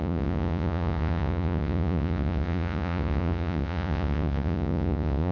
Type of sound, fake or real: fake